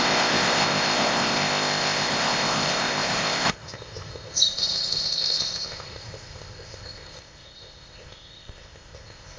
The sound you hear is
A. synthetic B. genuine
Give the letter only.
A